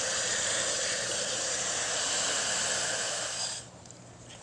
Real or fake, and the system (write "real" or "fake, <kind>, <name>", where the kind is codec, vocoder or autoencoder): fake, vocoder, BigVGAN v2